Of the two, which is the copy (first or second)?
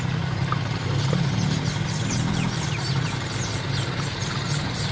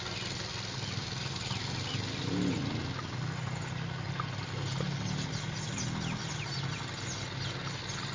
first